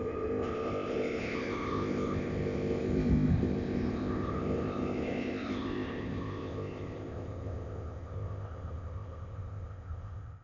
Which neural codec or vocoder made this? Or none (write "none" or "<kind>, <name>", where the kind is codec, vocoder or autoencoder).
codec, ZipCodec